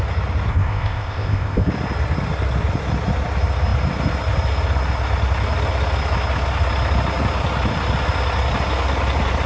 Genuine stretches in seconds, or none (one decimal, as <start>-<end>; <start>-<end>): 0.0-0.5; 1.7-9.5